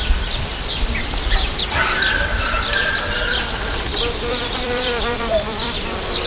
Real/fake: fake